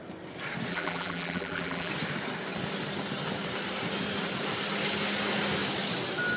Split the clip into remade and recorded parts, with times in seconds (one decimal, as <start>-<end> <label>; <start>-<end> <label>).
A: 0.0-0.7 recorded; 0.7-1.9 remade; 1.9-6.4 recorded

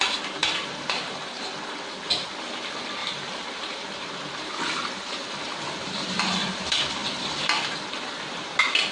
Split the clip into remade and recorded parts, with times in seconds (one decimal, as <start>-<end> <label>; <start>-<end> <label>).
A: 0.0-0.4 recorded; 0.4-1.1 remade; 1.1-3.0 recorded; 3.0-6.6 remade; 6.6-8.9 recorded